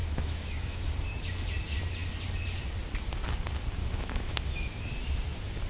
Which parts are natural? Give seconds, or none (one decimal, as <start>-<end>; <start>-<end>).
0.9-3.8; 4.8-5.7

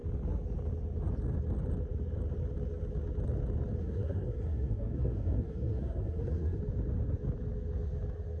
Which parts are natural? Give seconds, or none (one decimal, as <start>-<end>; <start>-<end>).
0.0-3.8; 6.6-8.4